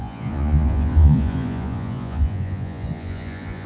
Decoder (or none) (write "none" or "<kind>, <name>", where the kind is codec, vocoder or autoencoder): vocoder, Vocos